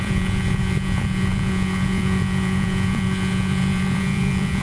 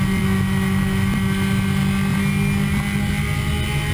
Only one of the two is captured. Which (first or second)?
second